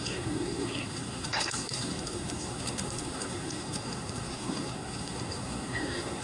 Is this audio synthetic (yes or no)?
yes